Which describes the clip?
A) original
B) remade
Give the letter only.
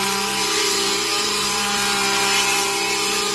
B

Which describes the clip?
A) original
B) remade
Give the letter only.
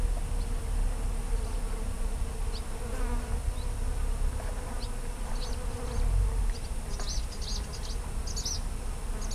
A